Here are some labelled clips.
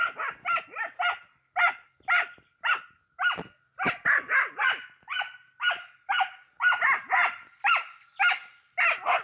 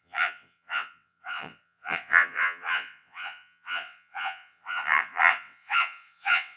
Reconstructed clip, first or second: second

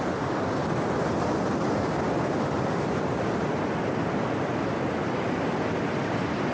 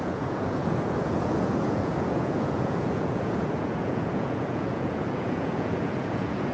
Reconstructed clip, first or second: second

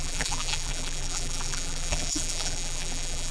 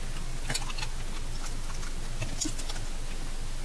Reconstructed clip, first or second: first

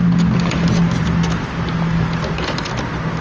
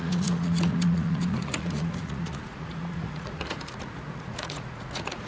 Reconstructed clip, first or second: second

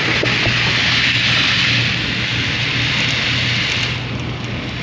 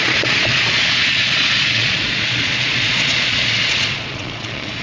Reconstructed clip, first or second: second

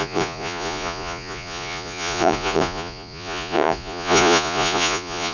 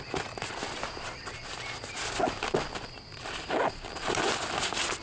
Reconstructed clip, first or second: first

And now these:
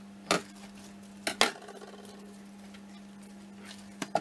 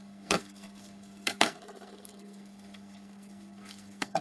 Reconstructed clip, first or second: second